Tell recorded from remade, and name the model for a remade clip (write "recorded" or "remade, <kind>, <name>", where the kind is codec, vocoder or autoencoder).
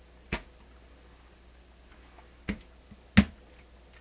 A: recorded